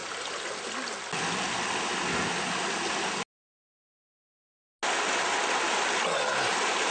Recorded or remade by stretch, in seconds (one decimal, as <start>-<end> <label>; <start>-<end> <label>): 0.0-6.9 recorded